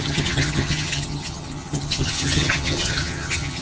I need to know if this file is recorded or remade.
remade